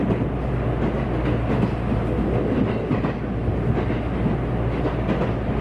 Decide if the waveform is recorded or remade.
recorded